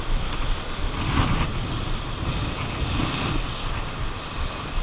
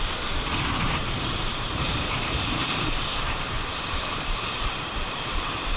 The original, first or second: first